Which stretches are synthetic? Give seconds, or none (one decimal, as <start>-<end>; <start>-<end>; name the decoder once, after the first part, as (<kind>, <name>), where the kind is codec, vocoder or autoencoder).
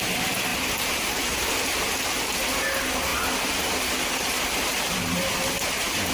0.5-1.5 (vocoder, BigVGAN v2)